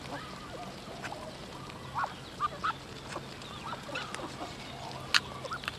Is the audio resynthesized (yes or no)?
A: no